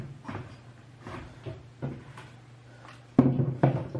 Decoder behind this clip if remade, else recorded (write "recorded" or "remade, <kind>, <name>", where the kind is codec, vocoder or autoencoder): recorded